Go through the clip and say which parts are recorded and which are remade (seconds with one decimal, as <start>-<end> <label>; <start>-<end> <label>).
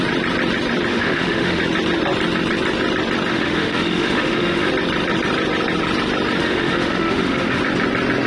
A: 0.0-0.9 recorded; 0.9-1.6 remade; 1.6-3.3 recorded; 3.3-4.7 remade; 4.7-6.4 recorded; 6.4-7.6 remade; 7.6-8.3 recorded